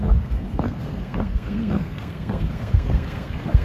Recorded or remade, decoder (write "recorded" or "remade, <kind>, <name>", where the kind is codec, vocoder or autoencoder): remade, codec, SNAC